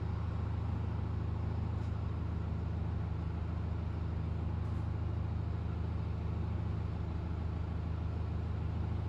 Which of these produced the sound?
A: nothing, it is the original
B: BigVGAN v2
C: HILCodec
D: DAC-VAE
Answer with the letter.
A